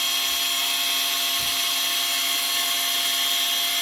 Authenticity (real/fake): real